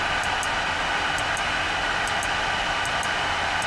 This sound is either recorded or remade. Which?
recorded